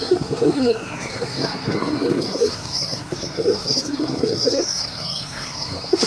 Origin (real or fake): fake